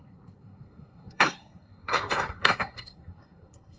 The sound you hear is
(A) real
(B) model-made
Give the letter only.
B